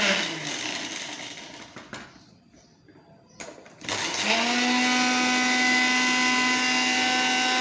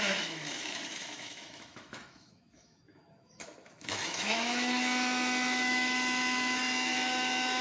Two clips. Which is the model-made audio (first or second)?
second